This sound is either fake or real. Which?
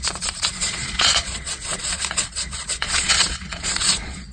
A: fake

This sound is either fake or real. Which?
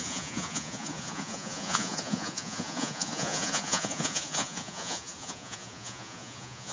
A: fake